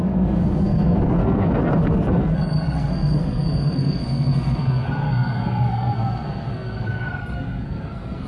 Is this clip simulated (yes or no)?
yes